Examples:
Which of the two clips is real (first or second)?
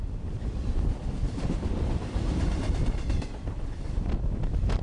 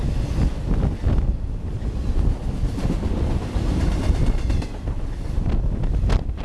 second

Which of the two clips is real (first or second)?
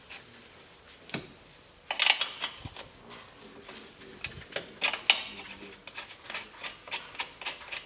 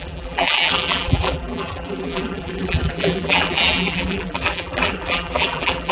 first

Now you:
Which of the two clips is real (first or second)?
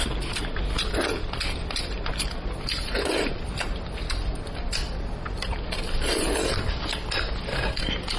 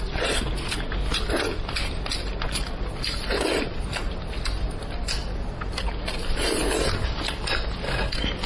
second